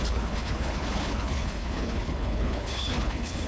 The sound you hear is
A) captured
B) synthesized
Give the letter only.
B